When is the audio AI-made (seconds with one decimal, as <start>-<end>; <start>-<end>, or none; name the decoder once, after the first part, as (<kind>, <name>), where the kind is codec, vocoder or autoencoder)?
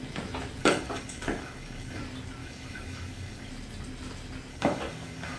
0.6-2.0 (codec, DAC); 2.4-3.5; 4.5-5.4